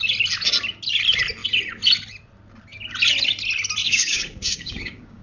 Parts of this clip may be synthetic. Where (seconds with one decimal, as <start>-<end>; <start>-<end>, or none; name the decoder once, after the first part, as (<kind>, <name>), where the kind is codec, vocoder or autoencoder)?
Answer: 3.8-5.2 (codec, DAC)